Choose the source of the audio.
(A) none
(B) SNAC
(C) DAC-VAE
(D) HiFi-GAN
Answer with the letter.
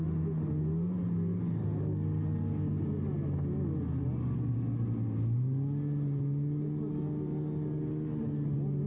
A